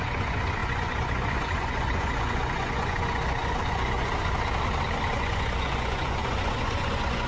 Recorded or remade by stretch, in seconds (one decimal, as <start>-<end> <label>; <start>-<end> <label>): 0.0-4.1 remade; 4.1-5.1 recorded; 5.1-7.3 remade